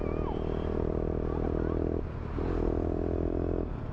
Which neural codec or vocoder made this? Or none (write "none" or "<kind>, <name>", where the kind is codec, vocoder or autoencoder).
none